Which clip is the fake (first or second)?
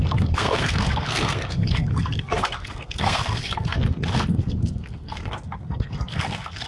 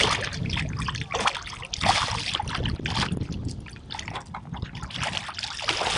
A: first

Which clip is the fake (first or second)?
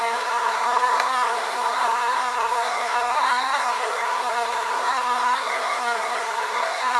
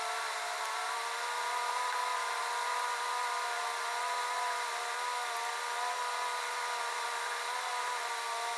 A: first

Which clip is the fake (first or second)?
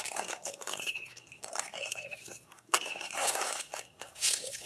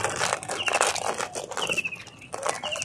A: first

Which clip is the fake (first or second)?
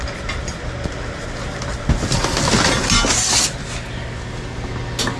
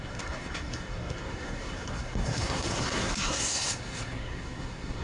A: second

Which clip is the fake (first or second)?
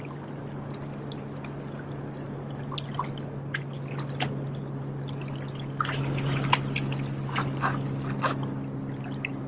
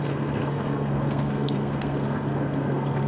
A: second